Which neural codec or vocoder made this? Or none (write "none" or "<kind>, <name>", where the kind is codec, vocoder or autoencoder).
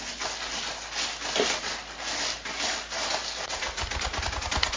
none